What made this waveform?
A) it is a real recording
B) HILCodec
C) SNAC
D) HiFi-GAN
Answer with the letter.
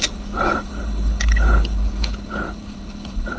B